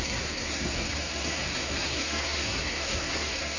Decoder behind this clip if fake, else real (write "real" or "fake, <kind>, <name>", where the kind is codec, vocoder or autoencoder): fake, codec, SNAC